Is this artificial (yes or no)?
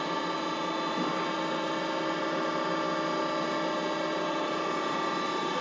no